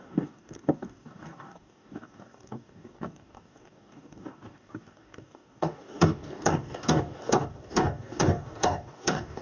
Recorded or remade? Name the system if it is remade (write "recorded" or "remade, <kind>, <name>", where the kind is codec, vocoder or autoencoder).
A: remade, codec, DAC